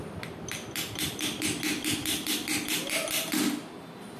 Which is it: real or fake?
real